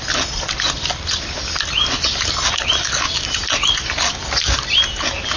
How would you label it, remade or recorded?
recorded